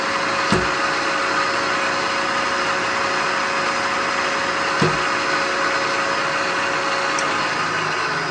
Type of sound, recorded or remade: recorded